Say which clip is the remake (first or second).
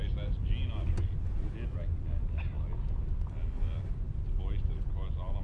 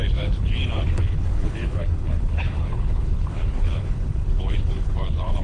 second